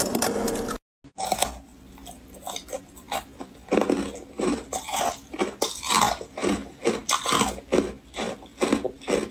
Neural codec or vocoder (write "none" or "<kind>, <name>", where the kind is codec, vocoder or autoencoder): none